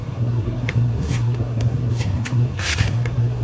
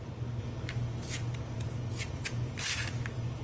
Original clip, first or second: second